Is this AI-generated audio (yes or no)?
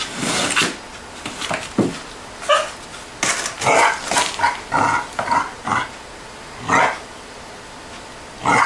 no